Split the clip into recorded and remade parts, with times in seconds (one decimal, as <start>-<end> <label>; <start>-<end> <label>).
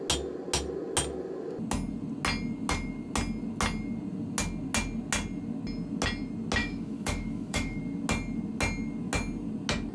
0.0-6.6 recorded; 6.6-7.8 remade; 7.8-9.9 recorded